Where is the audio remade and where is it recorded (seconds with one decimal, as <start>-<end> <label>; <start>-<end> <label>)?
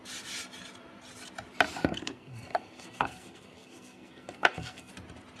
0.0-1.7 recorded; 1.7-4.9 remade; 4.9-5.4 recorded